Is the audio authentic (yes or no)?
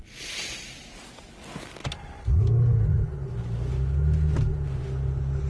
yes